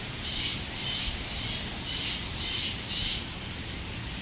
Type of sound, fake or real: real